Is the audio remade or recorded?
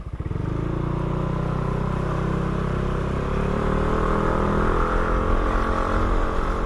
recorded